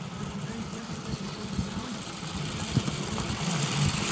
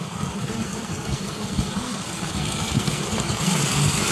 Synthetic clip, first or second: second